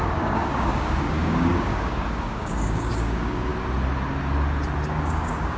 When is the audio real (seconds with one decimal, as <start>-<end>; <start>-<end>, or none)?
3.5-5.0